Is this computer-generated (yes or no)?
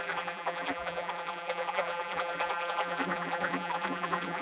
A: yes